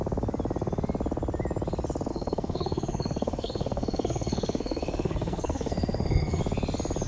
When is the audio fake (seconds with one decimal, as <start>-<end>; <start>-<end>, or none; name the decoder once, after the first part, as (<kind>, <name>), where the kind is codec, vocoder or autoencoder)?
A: 2.1-6.4 (codec, SNAC)